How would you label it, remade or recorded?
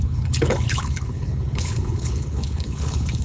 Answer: remade